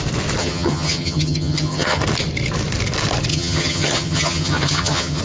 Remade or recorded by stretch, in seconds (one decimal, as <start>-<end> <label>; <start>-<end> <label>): 0.0-0.4 recorded; 0.4-2.0 remade; 2.0-3.3 recorded; 3.3-5.2 remade